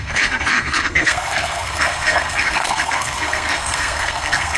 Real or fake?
fake